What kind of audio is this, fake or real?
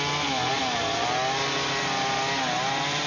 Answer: real